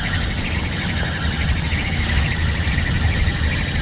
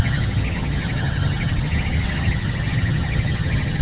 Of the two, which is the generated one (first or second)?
second